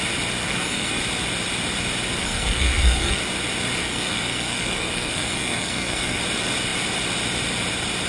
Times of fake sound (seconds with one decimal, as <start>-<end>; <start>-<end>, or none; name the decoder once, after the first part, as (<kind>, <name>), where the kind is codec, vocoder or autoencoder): 0.4-1.0 (codec, SNAC); 2.2-3.2; 3.8-6.2